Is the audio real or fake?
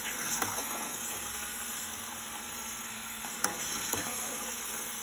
fake